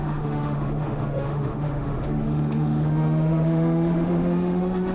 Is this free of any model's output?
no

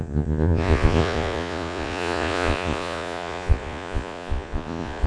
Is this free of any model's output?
no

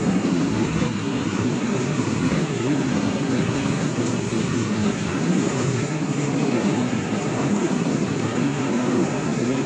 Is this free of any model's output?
no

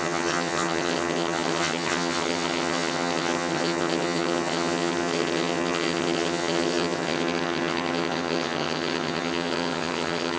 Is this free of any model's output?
no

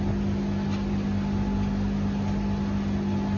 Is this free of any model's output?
yes